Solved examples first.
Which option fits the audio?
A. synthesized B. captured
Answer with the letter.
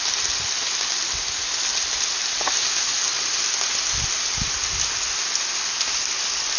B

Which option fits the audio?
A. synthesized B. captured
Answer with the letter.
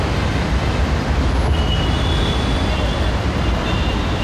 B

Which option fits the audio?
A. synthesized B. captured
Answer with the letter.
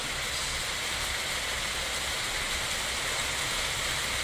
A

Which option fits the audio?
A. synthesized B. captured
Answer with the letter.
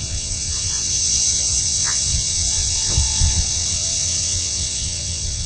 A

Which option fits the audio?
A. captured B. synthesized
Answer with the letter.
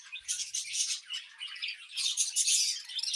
A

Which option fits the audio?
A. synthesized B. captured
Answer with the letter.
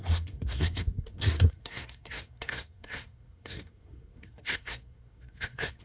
A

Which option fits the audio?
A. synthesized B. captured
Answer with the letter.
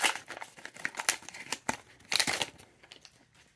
B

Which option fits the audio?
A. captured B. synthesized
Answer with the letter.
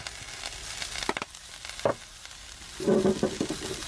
A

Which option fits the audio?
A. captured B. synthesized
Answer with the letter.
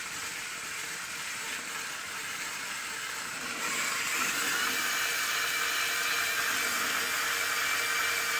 A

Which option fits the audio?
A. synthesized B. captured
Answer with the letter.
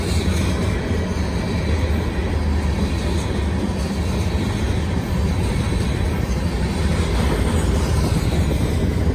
B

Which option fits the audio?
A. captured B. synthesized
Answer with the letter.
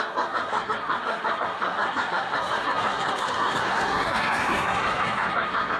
B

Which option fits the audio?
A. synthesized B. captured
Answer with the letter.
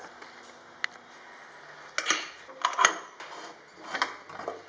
B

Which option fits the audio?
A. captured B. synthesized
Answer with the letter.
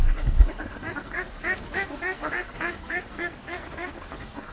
B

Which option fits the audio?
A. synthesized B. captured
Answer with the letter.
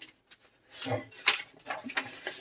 B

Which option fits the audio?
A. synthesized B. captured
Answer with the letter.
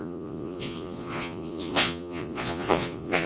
A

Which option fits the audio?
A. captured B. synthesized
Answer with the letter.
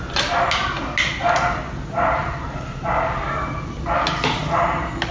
A